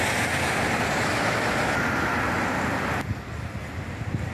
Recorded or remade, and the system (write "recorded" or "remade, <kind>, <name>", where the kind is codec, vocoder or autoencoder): recorded